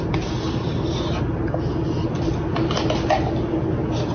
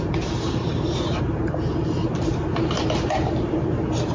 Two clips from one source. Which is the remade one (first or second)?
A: second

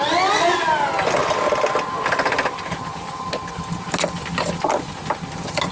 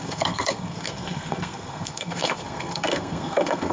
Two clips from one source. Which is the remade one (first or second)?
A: second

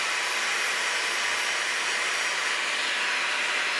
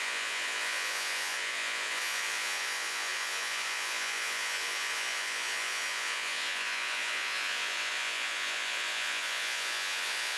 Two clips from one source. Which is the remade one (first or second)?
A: second